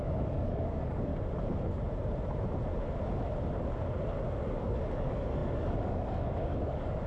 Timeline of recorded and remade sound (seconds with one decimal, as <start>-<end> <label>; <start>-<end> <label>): 0.0-1.1 remade; 1.1-4.5 recorded; 4.5-7.1 remade